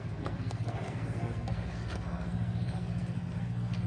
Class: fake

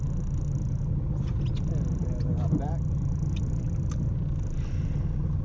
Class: real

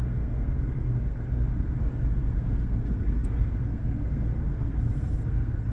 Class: fake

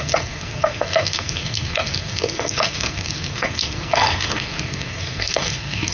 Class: fake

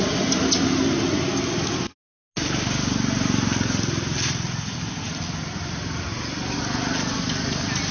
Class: real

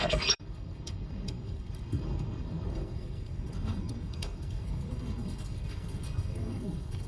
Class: fake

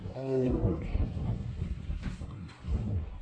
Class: fake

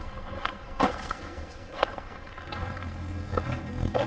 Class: fake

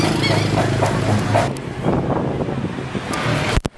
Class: real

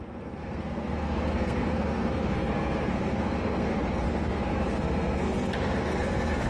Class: fake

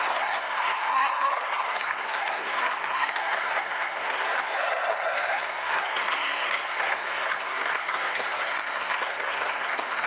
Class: fake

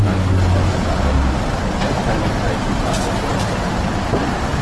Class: real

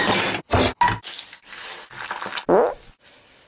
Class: real